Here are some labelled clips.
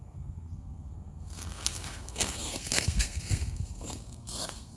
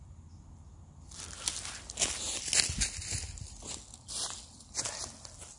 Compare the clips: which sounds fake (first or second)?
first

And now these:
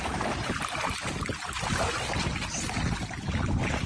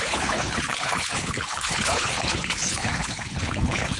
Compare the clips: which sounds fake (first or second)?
second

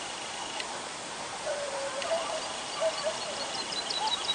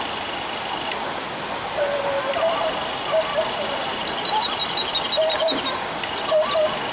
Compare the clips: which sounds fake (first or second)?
first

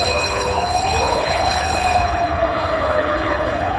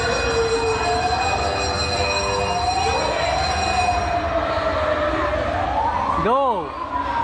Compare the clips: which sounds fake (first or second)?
first